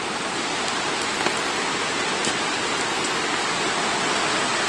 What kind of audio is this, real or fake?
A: real